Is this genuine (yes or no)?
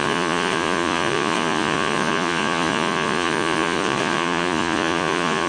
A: no